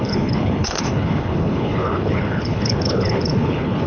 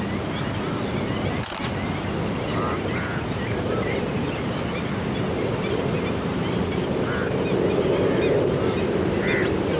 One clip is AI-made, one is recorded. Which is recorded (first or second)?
second